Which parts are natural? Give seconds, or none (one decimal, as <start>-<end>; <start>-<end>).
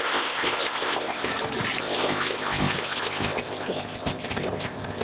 1.3-1.8